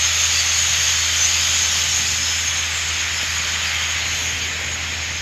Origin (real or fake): real